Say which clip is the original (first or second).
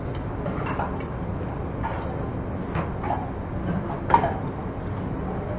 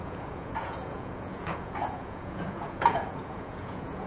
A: first